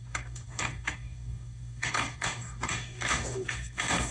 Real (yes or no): no